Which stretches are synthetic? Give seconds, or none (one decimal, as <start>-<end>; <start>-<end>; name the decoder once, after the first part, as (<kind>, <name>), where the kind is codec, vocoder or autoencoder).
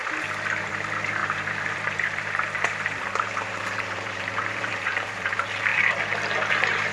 0.6-5.7 (vocoder, BigVGAN v2); 6.5-6.9